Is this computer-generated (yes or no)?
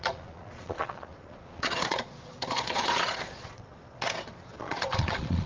yes